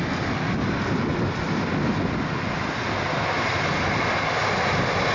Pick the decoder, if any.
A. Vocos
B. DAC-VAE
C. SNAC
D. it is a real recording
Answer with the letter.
D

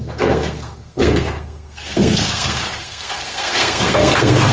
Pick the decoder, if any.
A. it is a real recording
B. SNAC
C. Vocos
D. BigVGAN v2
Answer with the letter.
B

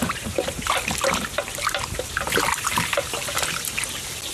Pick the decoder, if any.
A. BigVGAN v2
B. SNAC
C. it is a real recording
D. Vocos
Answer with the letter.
A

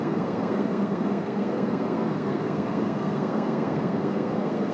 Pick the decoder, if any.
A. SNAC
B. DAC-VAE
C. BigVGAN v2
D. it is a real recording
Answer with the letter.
A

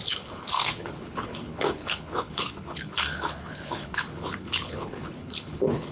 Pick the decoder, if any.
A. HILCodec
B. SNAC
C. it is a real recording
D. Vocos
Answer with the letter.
A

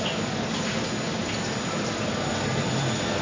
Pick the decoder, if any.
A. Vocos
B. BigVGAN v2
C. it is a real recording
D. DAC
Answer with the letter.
C